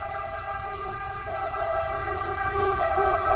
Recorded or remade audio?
remade